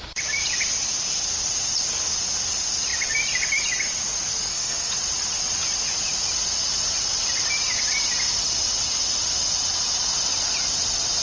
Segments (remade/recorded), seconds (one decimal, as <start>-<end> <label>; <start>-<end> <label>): 0.0-4.3 recorded; 4.3-4.9 remade; 4.9-11.2 recorded